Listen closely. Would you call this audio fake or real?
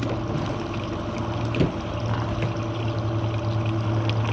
real